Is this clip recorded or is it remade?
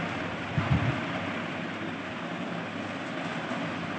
recorded